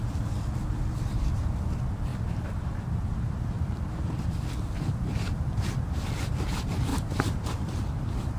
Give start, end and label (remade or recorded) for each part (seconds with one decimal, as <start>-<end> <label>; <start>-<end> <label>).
0.0-2.1 recorded; 2.1-6.4 remade; 6.4-6.9 recorded; 6.9-8.4 remade